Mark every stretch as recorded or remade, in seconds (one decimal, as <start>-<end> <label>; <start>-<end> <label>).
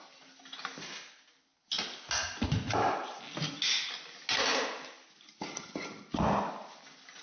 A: 0.0-7.2 recorded